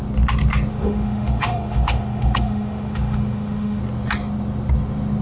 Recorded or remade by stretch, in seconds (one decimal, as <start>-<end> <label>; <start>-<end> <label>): 0.0-0.7 recorded; 0.7-3.8 remade; 3.8-5.2 recorded